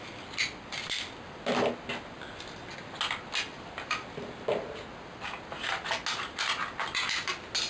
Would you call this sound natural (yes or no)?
yes